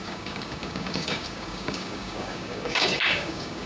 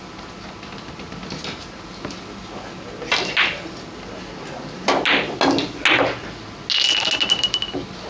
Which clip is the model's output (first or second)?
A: first